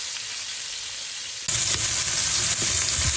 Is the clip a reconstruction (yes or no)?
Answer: no